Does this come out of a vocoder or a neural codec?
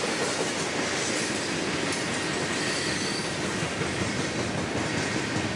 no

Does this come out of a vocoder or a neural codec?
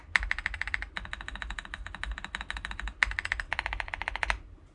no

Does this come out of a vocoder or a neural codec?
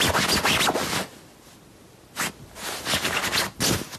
no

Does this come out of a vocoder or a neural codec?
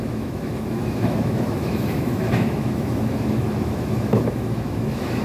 yes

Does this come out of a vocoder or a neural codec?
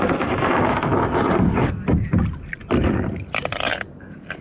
yes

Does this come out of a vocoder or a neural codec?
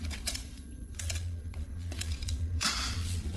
yes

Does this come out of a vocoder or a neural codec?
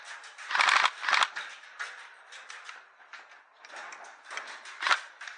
no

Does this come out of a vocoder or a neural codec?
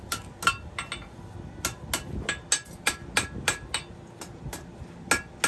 no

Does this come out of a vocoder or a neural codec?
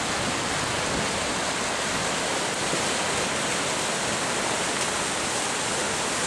no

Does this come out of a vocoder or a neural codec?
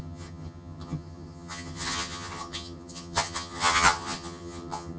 yes